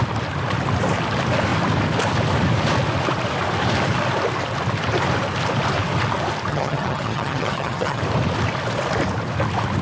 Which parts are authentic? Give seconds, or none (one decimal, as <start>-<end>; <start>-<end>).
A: 0.0-6.5; 8.0-9.8